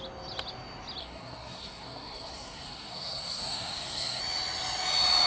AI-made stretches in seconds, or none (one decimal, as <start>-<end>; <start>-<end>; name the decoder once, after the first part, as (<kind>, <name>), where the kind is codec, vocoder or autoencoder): 1.0-4.2 (codec, SNAC)